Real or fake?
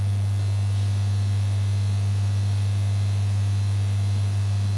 real